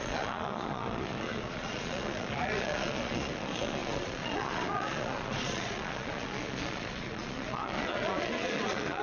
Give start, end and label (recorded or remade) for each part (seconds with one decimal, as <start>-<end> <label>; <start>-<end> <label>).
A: 0.0-9.0 remade